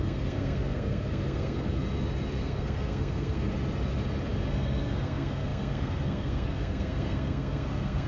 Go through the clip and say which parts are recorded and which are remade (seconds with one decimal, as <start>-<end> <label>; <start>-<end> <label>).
0.0-1.7 remade; 1.7-2.4 recorded; 2.4-3.5 remade; 3.5-4.5 recorded; 4.5-8.1 remade